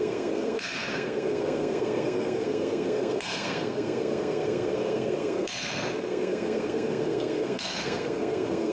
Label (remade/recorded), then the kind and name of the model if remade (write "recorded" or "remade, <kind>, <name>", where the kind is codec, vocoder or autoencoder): remade, codec, SNAC